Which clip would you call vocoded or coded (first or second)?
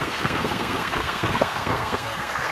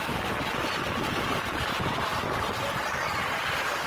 first